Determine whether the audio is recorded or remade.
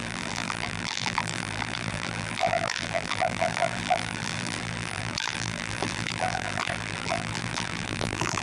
remade